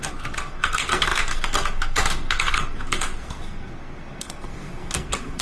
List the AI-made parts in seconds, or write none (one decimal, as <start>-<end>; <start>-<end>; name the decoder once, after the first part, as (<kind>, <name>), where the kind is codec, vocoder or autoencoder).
0.0-5.4 (codec, SNAC)